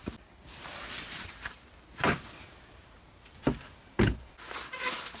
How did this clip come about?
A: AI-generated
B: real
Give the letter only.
B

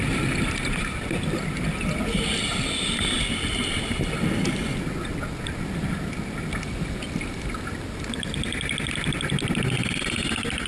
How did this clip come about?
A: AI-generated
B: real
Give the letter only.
B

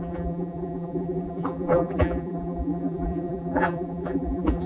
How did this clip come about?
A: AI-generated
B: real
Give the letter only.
A